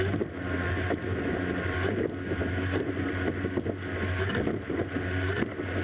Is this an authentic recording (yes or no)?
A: yes